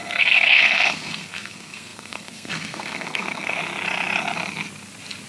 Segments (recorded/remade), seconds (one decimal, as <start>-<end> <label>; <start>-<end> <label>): 0.0-3.6 remade; 3.6-5.3 recorded